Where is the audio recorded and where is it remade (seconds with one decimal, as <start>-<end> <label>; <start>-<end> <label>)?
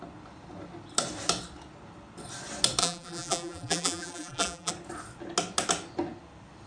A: 0.0-2.8 recorded; 2.8-4.7 remade; 4.7-6.7 recorded